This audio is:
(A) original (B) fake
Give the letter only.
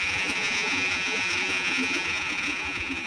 B